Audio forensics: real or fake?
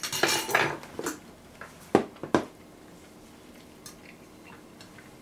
real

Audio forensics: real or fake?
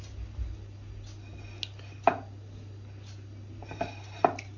real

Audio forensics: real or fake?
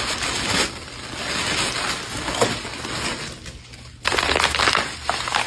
real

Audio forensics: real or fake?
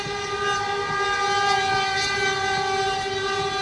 real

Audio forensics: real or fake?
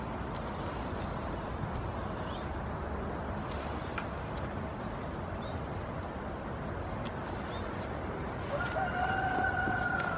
real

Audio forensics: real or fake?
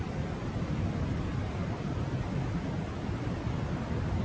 real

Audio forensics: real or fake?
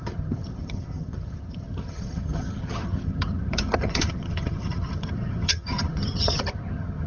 fake